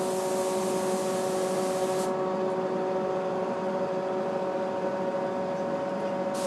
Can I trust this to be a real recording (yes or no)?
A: yes